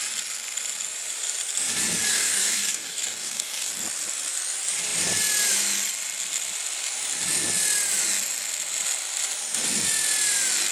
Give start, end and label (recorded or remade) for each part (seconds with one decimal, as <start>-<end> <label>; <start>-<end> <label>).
0.0-2.1 recorded; 2.1-3.7 remade; 3.7-10.7 recorded